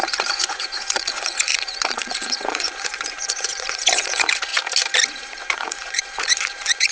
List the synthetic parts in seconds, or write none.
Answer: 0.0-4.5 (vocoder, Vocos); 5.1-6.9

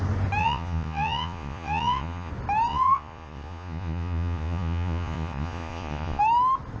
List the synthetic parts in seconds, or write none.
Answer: 0.4-2.3 (vocoder, Vocos); 2.7-6.2